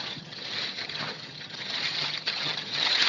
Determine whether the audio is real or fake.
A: fake